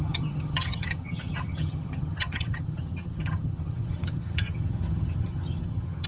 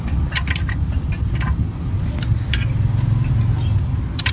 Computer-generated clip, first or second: first